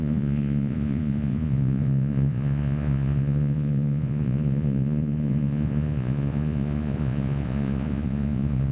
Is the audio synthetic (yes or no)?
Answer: yes